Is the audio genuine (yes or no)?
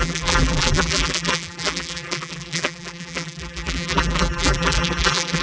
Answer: no